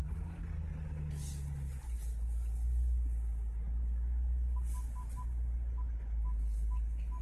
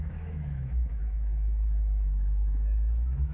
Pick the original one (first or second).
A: first